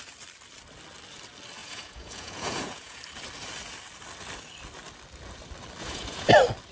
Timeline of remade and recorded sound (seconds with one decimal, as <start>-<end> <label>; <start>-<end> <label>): 0.0-1.6 recorded; 1.6-3.0 remade; 3.0-5.8 recorded; 5.8-6.3 remade; 6.3-6.7 recorded